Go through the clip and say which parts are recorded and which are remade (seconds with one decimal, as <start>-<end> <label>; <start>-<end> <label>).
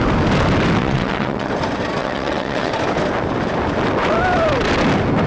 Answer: 0.0-0.8 recorded; 0.8-1.5 remade; 1.5-2.0 recorded; 2.0-2.7 remade; 2.7-5.3 recorded